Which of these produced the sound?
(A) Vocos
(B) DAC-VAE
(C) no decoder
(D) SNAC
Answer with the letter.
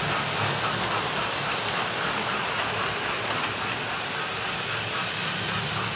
C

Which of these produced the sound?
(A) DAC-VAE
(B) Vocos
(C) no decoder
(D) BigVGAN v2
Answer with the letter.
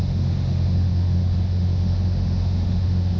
A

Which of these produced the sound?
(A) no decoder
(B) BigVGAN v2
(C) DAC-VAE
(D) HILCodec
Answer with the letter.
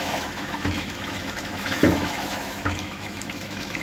C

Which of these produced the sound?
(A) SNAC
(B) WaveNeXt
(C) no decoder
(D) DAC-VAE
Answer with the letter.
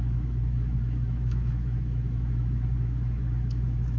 D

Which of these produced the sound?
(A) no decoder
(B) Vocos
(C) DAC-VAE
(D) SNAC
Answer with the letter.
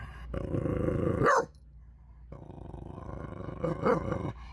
A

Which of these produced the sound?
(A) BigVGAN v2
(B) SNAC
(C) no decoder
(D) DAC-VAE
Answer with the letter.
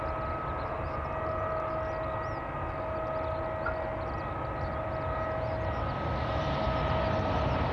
C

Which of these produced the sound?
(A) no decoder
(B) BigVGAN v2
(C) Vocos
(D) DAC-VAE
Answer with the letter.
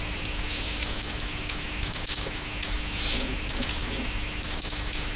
D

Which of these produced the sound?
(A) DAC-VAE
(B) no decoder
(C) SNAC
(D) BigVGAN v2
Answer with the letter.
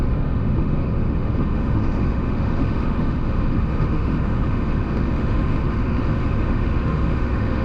A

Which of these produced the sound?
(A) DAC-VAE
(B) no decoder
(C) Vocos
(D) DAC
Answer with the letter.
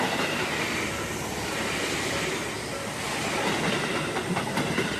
B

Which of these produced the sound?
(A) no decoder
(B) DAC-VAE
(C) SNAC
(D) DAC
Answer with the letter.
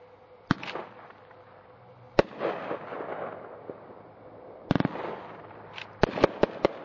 A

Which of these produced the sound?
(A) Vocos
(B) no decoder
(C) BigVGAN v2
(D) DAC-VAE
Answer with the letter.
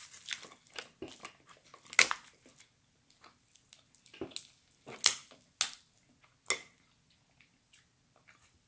B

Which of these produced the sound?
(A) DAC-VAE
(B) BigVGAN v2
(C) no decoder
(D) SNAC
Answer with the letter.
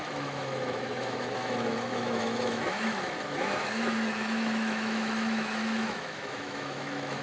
A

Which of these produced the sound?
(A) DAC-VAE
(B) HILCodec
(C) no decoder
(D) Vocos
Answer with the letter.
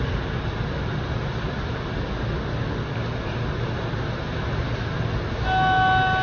C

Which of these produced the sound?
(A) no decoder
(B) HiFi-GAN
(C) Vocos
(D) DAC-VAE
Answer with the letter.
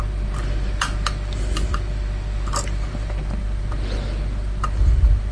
A